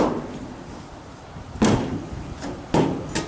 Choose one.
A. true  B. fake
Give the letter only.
A